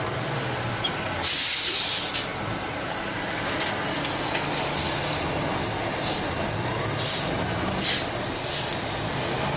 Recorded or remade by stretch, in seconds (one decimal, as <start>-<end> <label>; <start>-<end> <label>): 0.0-2.3 recorded; 2.3-3.6 remade; 3.6-9.6 recorded